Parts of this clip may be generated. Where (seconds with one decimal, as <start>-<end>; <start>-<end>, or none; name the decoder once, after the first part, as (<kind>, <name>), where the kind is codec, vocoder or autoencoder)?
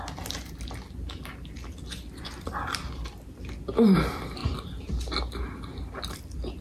none